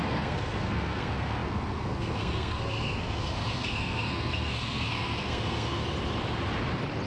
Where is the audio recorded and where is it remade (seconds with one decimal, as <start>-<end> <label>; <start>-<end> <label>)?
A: 0.0-5.8 remade; 5.8-7.1 recorded